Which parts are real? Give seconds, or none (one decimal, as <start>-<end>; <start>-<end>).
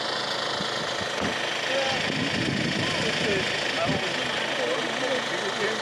0.0-5.8